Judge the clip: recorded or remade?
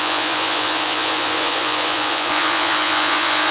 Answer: remade